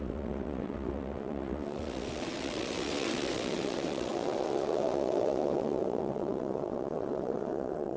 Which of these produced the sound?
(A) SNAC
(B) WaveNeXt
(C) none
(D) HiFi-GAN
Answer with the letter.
B